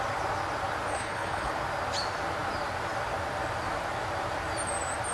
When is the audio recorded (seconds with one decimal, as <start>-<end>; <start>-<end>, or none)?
0.0-0.9; 1.5-5.1